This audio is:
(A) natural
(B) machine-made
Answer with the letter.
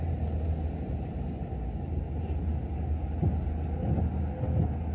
A